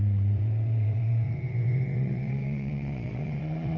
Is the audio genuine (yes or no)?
no